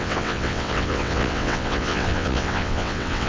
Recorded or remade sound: remade